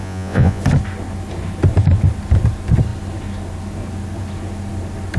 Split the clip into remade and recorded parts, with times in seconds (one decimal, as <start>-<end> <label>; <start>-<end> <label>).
0.0-0.6 remade; 0.6-5.2 recorded